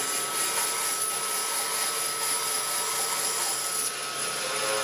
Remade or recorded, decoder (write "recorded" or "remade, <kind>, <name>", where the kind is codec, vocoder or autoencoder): recorded